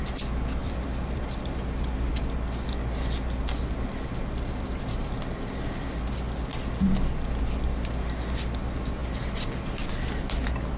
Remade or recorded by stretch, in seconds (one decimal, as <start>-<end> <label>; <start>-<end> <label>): 0.0-0.6 recorded; 0.6-2.2 remade; 2.2-10.8 recorded